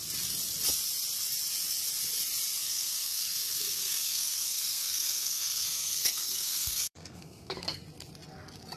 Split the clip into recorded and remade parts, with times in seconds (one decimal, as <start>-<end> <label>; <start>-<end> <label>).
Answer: 0.0-2.6 recorded; 2.6-7.8 remade; 7.8-8.8 recorded